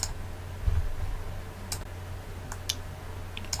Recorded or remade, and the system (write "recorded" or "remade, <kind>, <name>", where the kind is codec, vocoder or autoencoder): recorded